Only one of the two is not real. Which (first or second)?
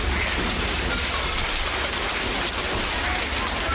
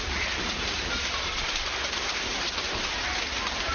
second